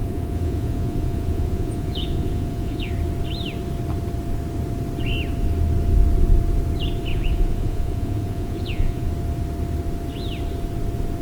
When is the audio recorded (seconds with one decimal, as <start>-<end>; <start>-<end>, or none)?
2.9-7.1; 9.1-11.2